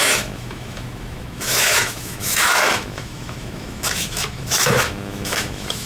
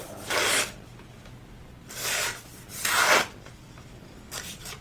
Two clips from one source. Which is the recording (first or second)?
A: second